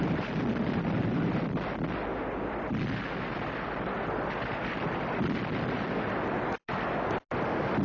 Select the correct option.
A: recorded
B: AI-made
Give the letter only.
A